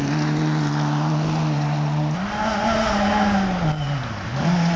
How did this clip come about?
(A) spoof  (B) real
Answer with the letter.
B